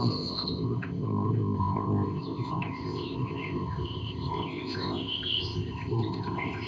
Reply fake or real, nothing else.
fake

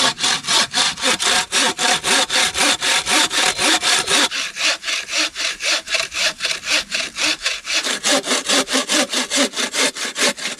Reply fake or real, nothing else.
fake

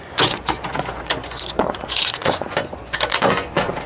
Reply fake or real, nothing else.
fake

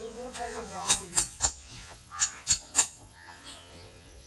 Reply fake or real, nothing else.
fake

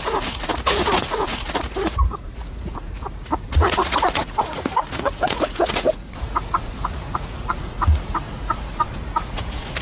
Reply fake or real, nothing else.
fake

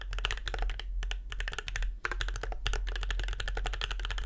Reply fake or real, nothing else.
real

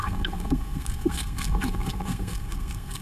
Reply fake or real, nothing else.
fake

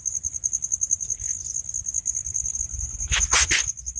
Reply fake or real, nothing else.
real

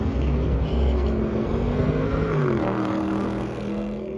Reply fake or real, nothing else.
fake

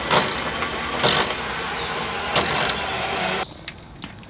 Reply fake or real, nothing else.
real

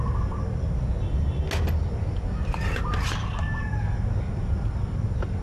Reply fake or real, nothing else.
real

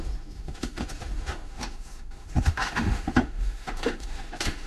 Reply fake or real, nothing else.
fake